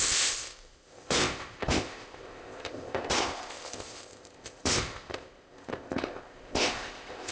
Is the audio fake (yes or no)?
yes